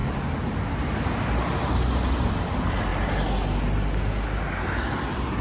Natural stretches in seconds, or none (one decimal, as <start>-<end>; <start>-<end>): 0.0-5.4